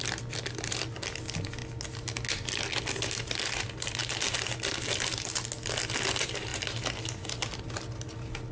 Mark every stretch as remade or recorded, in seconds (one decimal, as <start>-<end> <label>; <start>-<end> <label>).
0.0-8.5 recorded